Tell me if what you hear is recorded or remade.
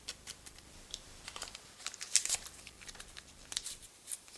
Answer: remade